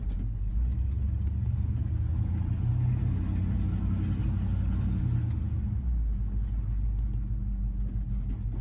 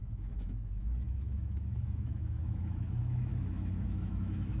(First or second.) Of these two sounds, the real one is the first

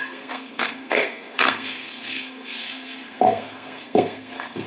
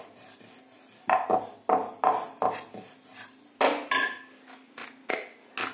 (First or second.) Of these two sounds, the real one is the second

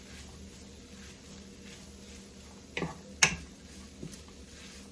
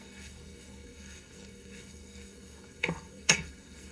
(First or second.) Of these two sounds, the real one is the first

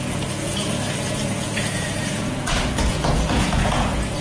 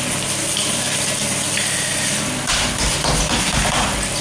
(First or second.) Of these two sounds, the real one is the second